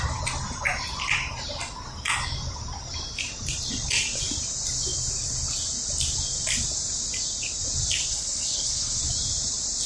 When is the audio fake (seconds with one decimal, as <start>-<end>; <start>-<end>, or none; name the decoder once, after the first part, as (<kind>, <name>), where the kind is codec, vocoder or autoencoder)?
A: 8.1-9.0 (codec, HILCodec)